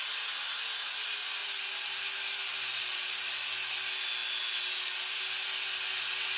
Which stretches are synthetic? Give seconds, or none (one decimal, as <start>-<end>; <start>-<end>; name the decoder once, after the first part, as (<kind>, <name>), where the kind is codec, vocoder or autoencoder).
none